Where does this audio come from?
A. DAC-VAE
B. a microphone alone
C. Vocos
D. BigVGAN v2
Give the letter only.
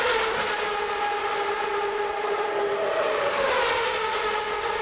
B